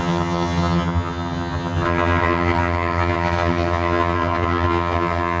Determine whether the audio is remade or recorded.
remade